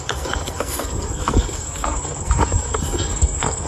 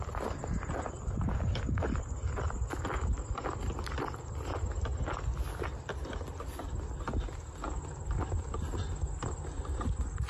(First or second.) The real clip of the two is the second